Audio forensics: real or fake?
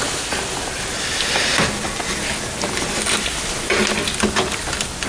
real